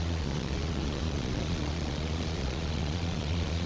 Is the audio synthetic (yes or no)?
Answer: yes